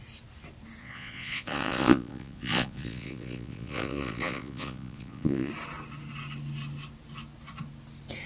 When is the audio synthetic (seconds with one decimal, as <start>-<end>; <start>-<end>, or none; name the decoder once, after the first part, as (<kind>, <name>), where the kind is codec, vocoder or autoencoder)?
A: 0.8-5.5 (vocoder, Vocos)